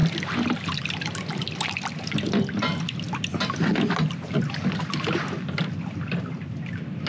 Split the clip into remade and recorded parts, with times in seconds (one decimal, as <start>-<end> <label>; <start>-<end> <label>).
0.0-7.1 recorded